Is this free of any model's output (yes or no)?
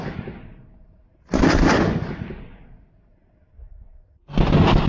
yes